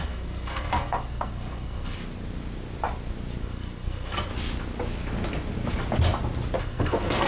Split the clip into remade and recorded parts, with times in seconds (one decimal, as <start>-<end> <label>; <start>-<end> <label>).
0.0-2.0 remade; 2.0-3.4 recorded; 3.4-4.3 remade; 4.3-6.6 recorded; 6.6-7.3 remade